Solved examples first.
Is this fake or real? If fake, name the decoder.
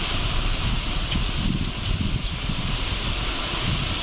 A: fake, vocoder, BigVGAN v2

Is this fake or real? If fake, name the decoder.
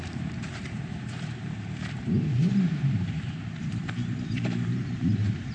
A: fake, vocoder, BigVGAN v2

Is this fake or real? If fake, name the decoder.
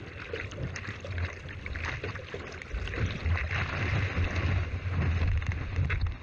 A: real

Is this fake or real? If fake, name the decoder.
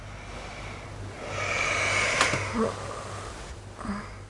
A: real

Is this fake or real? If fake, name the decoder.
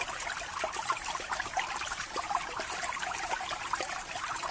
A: fake, vocoder, BigVGAN v2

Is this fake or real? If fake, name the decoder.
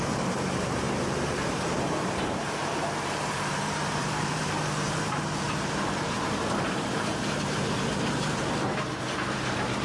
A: fake, vocoder, BigVGAN v2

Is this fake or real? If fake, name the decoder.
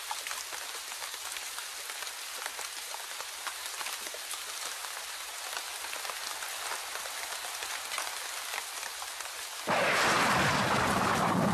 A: real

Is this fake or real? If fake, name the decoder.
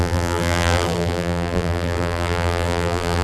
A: fake, vocoder, BigVGAN v2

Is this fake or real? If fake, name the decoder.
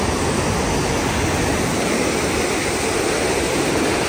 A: real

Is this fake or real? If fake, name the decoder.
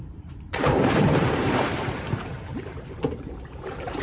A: fake, vocoder, BigVGAN v2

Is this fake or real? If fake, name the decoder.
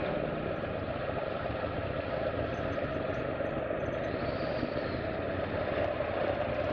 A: real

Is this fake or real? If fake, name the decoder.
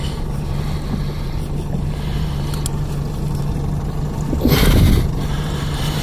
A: real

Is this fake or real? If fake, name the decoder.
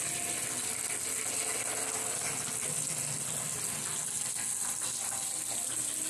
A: real